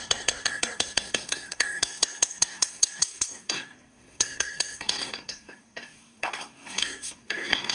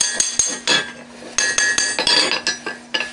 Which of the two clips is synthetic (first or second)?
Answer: first